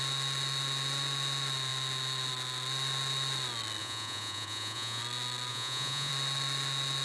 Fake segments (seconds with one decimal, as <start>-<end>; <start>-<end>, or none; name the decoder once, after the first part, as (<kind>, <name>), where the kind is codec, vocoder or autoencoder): 3.8-5.0 (vocoder, Vocos); 5.5-6.1